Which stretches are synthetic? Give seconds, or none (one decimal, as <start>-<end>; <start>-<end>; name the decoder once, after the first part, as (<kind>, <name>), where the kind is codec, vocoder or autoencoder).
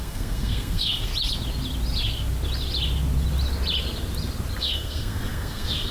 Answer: 0.0-1.1 (codec, SNAC); 4.6-5.9